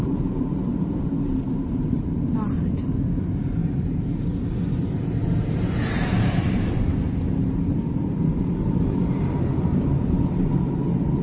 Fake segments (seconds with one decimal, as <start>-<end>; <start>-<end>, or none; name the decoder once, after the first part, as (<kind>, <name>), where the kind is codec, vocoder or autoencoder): 0.0-11.2 (vocoder, BigVGAN v2)